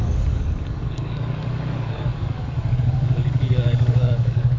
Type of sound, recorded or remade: remade